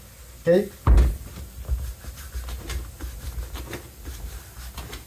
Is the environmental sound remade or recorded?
recorded